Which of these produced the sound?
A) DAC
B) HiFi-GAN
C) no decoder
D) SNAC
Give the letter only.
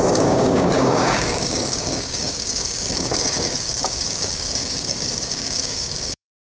A